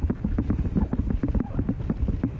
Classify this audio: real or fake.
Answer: real